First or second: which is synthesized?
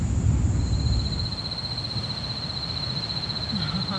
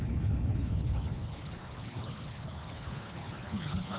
second